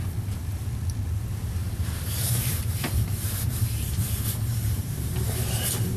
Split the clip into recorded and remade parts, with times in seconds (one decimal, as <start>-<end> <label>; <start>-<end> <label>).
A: 0.0-1.6 recorded; 1.6-5.2 remade; 5.2-6.0 recorded